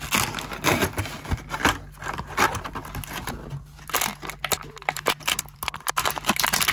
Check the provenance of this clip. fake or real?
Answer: real